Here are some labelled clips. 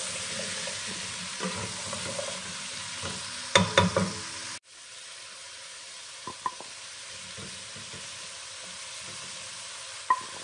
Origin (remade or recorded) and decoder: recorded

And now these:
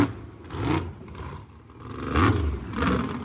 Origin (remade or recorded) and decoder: recorded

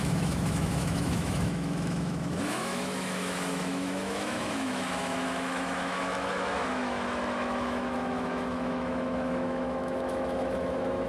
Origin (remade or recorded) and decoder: remade, autoencoder, DAC-VAE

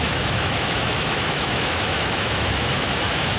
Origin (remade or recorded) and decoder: remade, autoencoder, DAC-VAE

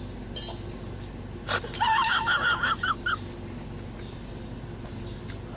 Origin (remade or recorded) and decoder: recorded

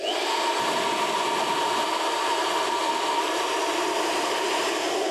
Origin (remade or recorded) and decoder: recorded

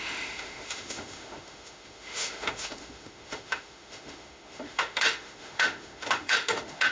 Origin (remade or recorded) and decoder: remade, autoencoder, DAC-VAE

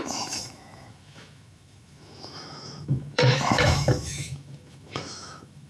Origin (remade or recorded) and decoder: remade, autoencoder, DAC-VAE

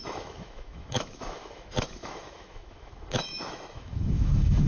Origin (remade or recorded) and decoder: remade, autoencoder, DAC-VAE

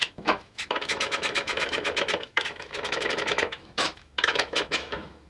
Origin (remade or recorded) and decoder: remade, autoencoder, DAC-VAE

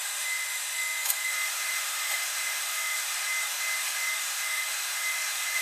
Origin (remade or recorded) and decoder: remade, autoencoder, DAC-VAE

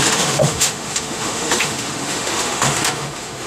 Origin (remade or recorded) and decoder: remade, autoencoder, DAC-VAE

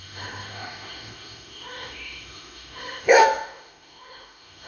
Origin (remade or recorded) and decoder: remade, autoencoder, DAC-VAE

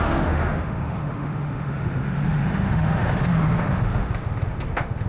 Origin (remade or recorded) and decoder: remade, autoencoder, DAC-VAE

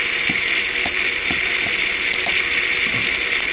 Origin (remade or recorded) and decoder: recorded